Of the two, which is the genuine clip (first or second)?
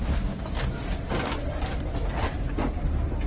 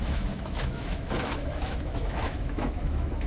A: first